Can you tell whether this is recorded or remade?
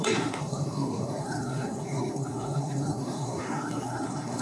remade